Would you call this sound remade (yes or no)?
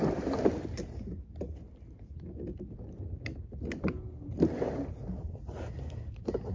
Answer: no